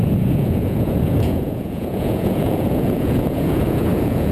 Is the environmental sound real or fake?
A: fake